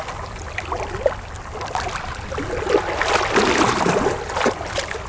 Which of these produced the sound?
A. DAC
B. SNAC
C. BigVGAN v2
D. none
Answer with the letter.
D